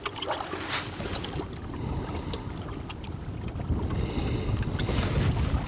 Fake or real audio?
real